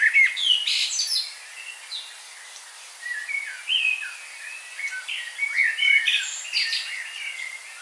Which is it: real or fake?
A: real